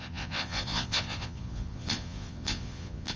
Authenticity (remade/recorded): remade